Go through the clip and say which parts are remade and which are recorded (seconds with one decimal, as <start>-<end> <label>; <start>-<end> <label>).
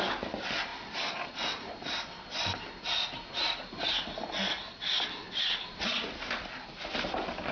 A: 0.0-7.5 recorded